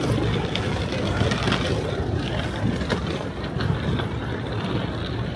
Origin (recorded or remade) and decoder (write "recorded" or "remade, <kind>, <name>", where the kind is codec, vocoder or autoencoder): recorded